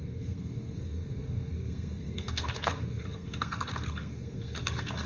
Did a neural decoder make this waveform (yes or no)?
yes